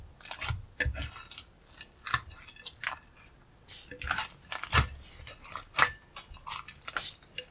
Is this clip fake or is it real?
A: real